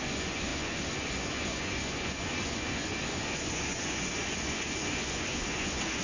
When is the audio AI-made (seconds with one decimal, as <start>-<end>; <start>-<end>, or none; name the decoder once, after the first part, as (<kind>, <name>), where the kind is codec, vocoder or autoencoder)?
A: 0.0-6.0 (vocoder, Vocos)